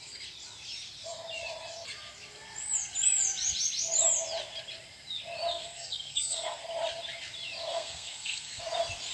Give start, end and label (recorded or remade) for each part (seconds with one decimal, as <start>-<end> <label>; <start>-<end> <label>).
0.0-5.5 recorded; 5.5-6.6 remade; 6.6-7.7 recorded; 7.7-8.6 remade; 8.6-9.1 recorded